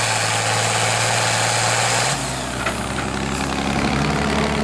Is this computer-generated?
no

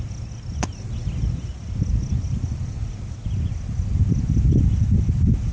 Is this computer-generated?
no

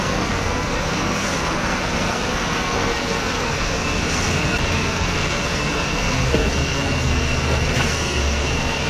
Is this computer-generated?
yes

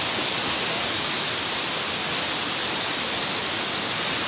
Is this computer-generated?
no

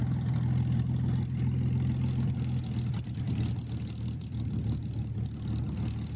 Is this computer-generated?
no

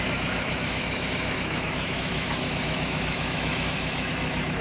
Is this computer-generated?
yes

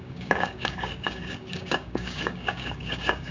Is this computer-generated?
yes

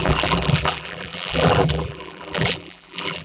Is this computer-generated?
yes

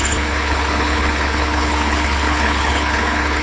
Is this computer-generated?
yes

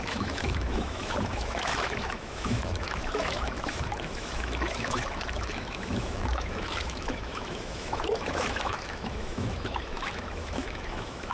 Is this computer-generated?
yes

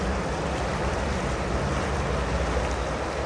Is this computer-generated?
no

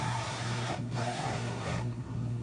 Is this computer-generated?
yes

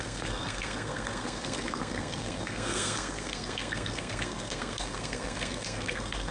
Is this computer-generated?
yes